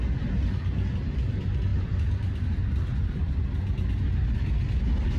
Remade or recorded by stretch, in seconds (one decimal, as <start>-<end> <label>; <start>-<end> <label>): 0.0-5.2 recorded